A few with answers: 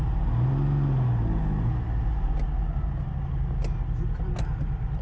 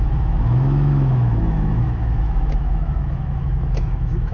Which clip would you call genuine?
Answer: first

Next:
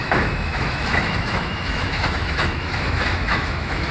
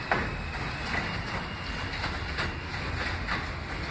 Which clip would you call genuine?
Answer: second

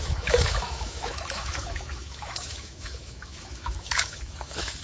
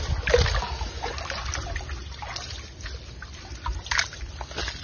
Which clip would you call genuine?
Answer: second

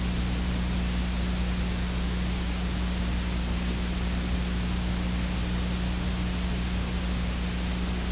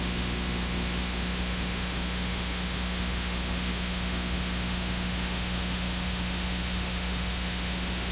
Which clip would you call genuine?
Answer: first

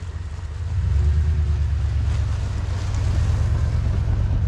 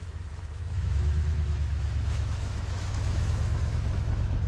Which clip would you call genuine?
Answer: first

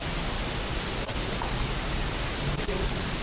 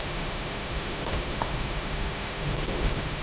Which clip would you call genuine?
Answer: first